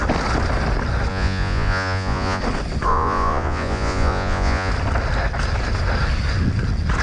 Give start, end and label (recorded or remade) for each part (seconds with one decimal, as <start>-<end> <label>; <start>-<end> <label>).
0.0-1.1 recorded; 1.1-2.4 remade; 2.4-2.9 recorded; 2.9-4.7 remade; 4.7-7.0 recorded